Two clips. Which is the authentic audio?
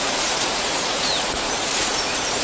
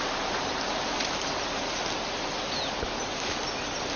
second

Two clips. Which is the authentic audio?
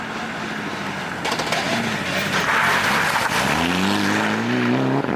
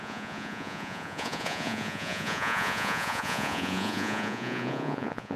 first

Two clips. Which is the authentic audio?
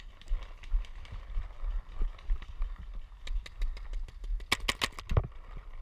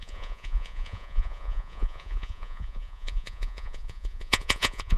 first